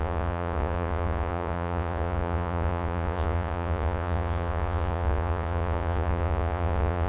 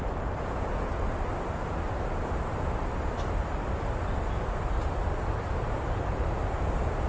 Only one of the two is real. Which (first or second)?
second